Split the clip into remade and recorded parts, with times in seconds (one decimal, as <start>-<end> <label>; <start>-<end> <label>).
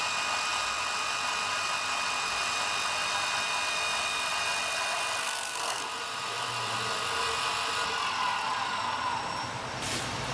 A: 0.0-5.2 recorded; 5.2-5.8 remade; 5.8-10.3 recorded